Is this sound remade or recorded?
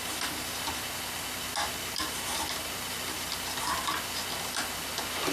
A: recorded